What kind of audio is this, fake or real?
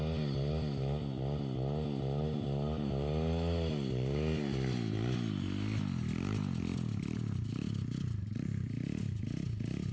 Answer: real